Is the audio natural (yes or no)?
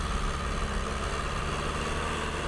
yes